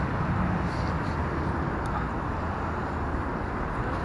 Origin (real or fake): real